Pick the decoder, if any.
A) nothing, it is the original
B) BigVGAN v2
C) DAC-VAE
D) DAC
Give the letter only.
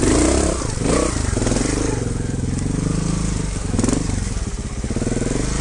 A